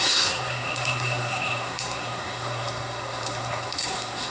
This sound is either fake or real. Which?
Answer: fake